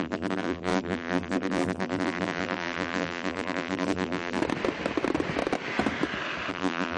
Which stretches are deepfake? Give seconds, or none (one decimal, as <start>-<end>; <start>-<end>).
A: 0.0-4.4; 6.5-7.0